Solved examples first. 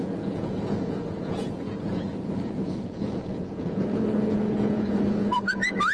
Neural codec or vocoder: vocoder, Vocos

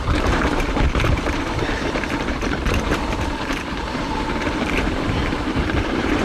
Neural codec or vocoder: vocoder, BigVGAN v2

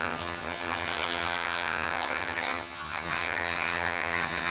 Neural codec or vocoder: vocoder, HiFi-GAN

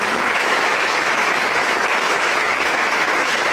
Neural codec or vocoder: autoencoder, DAC-VAE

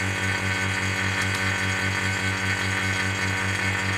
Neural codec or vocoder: none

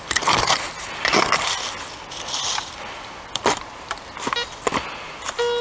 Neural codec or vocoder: none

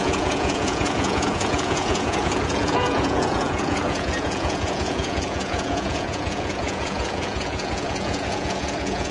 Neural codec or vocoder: vocoder, Vocos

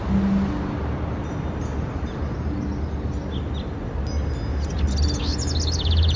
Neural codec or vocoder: none